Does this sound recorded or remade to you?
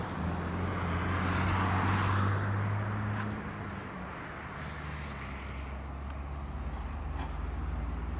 recorded